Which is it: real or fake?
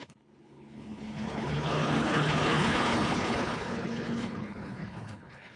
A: fake